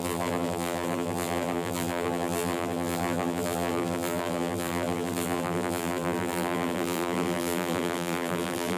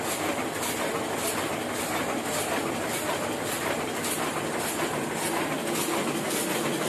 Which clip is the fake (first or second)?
first